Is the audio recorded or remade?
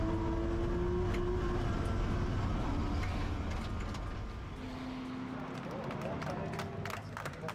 recorded